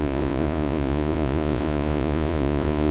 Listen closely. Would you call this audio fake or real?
fake